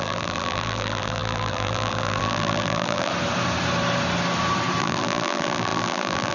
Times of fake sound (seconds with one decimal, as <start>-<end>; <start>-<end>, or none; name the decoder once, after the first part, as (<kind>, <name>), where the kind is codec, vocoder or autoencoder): 0.0-3.1 (vocoder, BigVGAN v2); 4.8-6.3